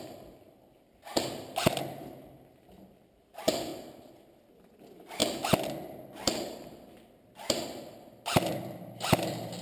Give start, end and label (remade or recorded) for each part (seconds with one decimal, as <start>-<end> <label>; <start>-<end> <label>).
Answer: 0.0-1.1 remade; 1.1-2.3 recorded; 2.3-3.7 remade; 3.7-4.3 recorded; 4.3-5.2 remade; 5.2-6.5 recorded; 6.5-9.6 remade